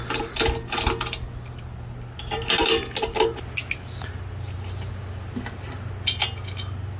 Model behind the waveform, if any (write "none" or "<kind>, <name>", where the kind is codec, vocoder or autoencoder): none